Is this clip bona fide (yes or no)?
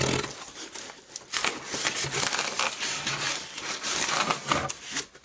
yes